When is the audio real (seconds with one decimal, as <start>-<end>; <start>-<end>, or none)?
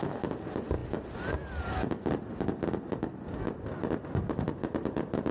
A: 0.0-5.3